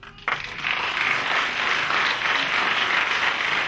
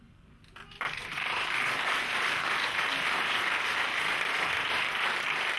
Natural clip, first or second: first